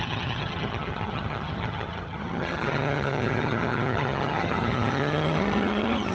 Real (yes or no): no